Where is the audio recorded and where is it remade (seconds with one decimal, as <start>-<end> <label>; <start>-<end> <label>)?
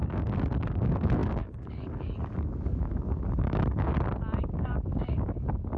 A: 0.0-3.9 remade; 3.9-4.4 recorded; 4.4-5.8 remade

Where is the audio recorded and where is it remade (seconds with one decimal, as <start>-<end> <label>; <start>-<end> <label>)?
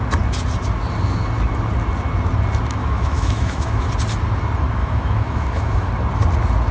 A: 0.0-2.8 recorded; 2.8-3.9 remade; 3.9-4.8 recorded; 4.8-5.9 remade; 5.9-6.7 recorded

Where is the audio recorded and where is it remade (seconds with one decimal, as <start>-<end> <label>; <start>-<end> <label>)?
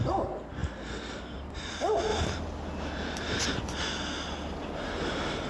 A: 0.0-5.5 recorded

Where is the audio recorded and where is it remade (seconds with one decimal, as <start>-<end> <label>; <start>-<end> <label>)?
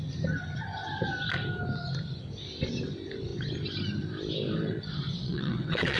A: 0.0-5.1 recorded; 5.1-6.0 remade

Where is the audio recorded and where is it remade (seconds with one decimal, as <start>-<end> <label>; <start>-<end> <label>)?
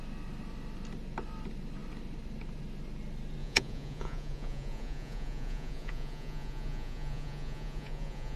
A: 0.0-3.4 recorded; 3.4-8.4 remade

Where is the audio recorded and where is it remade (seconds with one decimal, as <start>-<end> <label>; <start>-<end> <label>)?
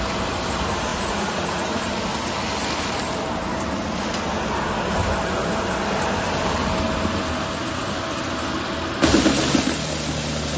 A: 0.0-0.9 recorded; 0.9-1.8 remade; 1.8-10.6 recorded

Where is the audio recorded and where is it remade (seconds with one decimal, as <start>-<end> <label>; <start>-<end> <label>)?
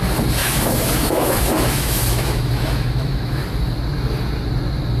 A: 0.0-0.4 recorded; 0.4-3.4 remade; 3.4-5.0 recorded